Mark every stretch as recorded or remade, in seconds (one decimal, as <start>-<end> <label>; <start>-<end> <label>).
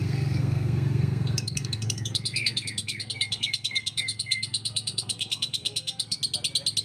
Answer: 0.0-6.2 remade; 6.2-6.8 recorded